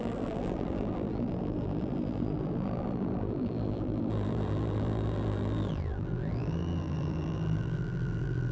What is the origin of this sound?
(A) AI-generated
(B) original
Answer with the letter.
A